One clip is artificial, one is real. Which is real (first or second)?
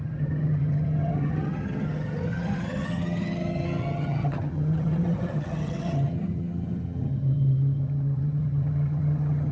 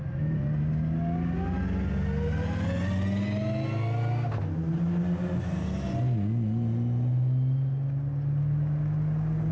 second